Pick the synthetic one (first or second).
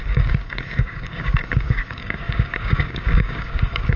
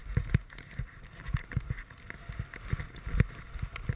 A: first